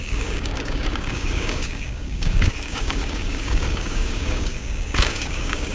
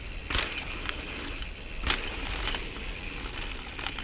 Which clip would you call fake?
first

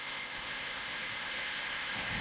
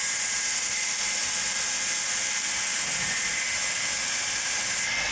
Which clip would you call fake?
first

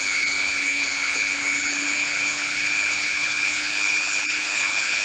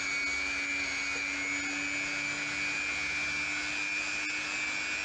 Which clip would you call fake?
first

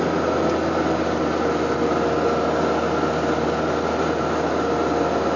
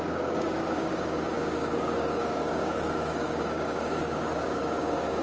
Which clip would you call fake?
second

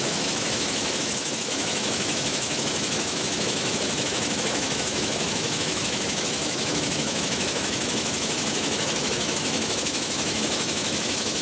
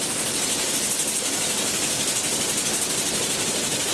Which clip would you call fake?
first